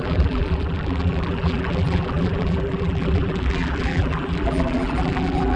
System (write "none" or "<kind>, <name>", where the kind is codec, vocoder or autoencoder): vocoder, BigVGAN v2